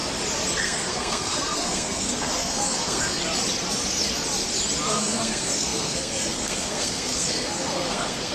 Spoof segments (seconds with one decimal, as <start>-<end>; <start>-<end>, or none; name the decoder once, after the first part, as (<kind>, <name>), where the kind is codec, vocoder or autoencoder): 0.6-3.2 (codec, SNAC); 4.9-8.3

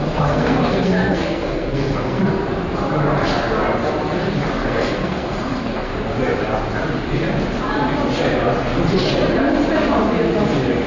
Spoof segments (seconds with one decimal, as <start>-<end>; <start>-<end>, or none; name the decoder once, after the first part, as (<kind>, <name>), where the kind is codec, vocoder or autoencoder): 0.0-2.2 (codec, SNAC); 4.6-5.9